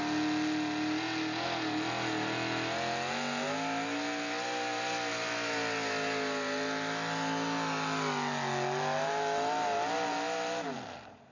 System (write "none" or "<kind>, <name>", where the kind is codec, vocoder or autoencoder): none